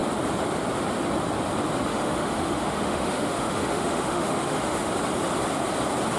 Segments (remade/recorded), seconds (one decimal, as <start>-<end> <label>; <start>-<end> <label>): 0.0-1.9 recorded; 1.9-4.9 remade; 4.9-6.2 recorded